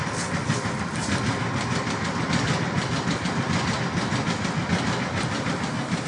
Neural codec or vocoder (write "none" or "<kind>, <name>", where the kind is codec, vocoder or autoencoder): none